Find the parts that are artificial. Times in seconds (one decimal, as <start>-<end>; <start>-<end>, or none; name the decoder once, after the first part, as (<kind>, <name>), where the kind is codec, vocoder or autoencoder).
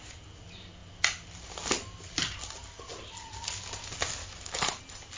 4.2-4.8 (autoencoder, DAC-VAE)